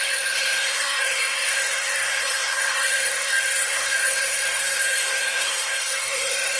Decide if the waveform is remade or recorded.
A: remade